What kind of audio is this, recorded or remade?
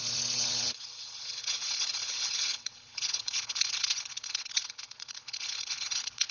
remade